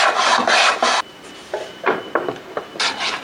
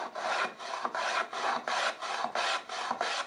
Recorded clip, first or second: second